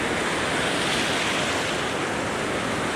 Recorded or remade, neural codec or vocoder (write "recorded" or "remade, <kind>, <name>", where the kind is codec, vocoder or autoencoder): recorded